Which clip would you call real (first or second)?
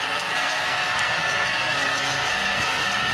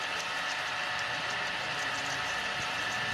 second